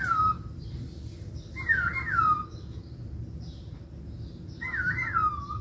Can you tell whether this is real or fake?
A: real